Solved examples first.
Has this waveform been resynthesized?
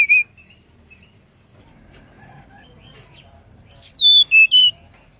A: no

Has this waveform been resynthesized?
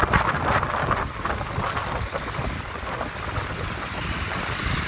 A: no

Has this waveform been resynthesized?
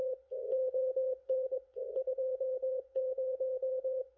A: yes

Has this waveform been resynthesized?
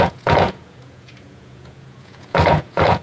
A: yes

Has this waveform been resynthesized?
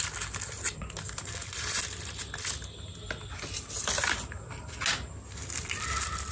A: no